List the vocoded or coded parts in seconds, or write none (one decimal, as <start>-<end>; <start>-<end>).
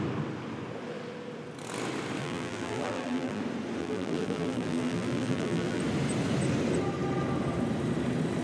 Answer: 2.2-3.4; 3.8-5.8